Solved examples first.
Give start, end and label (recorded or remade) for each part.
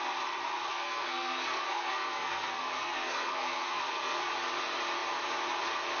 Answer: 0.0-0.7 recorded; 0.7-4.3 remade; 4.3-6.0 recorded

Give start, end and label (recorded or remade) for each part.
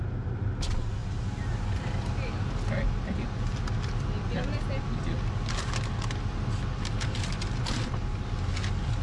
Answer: 0.0-9.0 recorded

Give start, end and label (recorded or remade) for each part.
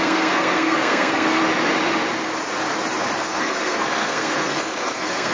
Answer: 0.0-1.4 remade; 1.4-3.2 recorded; 3.2-5.3 remade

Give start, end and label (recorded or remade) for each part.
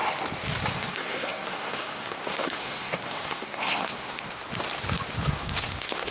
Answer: 0.0-0.7 recorded; 0.7-4.4 remade; 4.4-5.3 recorded; 5.3-6.1 remade